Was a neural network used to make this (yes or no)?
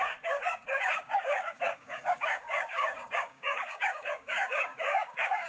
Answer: yes